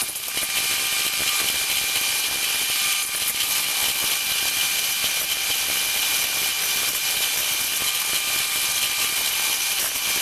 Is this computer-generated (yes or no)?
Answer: no